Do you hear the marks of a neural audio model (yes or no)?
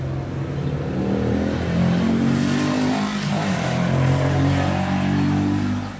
no